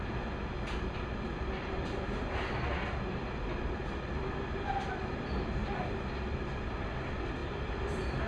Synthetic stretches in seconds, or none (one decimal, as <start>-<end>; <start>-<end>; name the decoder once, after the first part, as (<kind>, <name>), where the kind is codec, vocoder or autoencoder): none